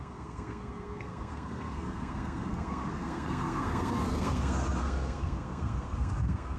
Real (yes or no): no